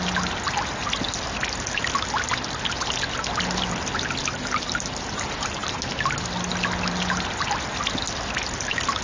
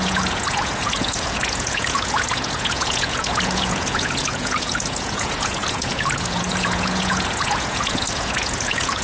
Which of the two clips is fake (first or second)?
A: second